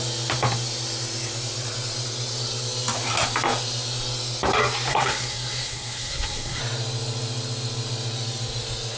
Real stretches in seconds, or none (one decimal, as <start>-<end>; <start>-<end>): 0.0-4.9; 6.6-9.0